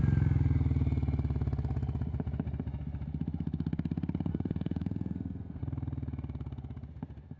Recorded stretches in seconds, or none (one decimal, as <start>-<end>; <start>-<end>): 0.0-4.3; 5.6-7.4